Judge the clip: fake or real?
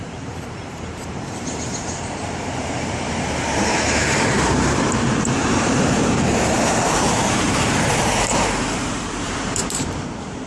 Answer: fake